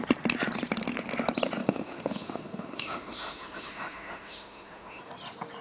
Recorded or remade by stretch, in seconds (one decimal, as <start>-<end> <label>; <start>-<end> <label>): 0.0-1.6 recorded; 1.6-5.0 remade; 5.0-5.6 recorded